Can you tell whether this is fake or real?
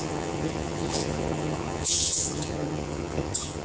fake